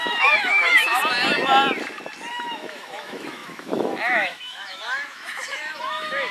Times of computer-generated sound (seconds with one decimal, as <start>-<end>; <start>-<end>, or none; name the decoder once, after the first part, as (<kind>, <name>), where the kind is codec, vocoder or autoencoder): 0.0-1.0 (autoencoder, DAC-VAE); 2.3-6.3